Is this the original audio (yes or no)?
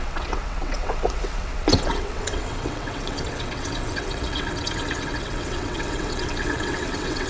no